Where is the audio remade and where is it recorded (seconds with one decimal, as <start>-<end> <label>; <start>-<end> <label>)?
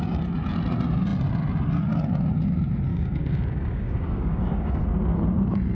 0.0-2.9 recorded; 2.9-4.8 remade; 4.8-5.7 recorded